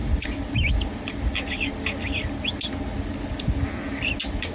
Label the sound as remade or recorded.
recorded